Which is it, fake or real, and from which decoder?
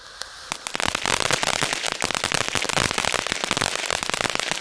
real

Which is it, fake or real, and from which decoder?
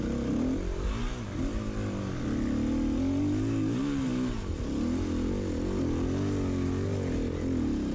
real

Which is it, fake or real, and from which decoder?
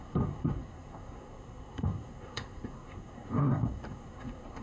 fake, codec, SNAC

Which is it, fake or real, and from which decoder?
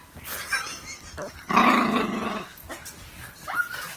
real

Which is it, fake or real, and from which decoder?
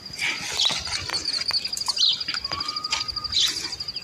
real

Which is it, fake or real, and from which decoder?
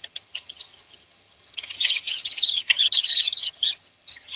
fake, vocoder, HiFi-GAN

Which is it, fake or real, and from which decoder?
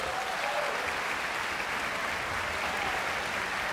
real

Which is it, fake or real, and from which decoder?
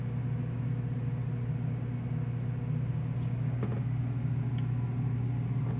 real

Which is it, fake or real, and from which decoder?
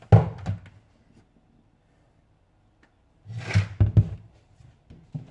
real